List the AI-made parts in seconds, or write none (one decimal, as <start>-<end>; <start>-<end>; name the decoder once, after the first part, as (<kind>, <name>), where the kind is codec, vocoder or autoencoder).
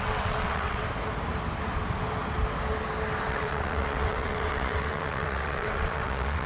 0.0-0.8 (vocoder, WaveNeXt); 3.3-6.5